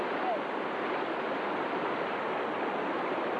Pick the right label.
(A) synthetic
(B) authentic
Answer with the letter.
B